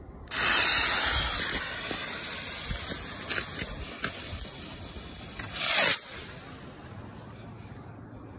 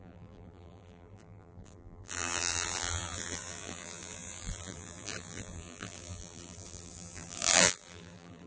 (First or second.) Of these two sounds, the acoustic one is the first